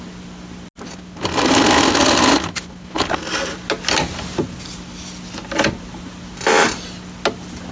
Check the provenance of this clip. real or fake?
real